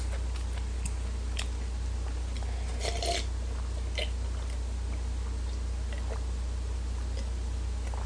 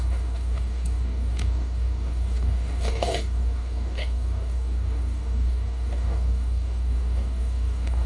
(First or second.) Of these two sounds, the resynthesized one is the second